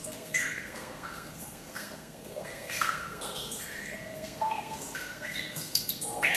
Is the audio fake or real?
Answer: fake